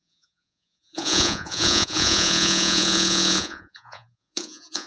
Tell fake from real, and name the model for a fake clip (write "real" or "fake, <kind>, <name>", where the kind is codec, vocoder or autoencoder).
fake, vocoder, Vocos